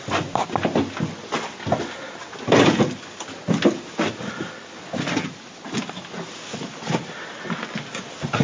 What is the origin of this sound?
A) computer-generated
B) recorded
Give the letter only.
B